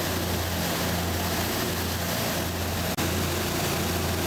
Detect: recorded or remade recorded